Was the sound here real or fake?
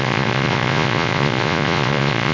fake